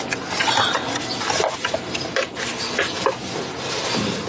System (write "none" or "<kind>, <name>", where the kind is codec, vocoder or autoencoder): none